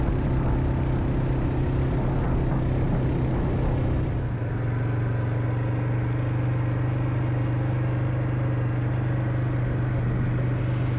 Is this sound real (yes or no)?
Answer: yes